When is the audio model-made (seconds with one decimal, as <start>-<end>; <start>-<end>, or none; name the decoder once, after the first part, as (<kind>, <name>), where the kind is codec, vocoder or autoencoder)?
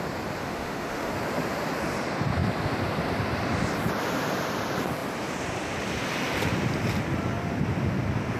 0.4-1.1 (autoencoder, DAC-VAE)